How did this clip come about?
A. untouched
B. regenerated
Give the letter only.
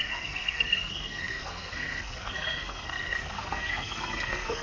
B